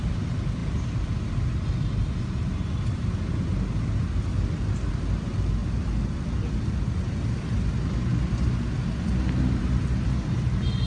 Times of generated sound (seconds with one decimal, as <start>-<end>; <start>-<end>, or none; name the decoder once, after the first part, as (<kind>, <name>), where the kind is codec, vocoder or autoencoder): 5.6-7.0 (vocoder, BigVGAN v2)